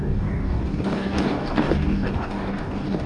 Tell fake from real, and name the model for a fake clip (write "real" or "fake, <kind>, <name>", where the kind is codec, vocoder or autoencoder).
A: fake, codec, DAC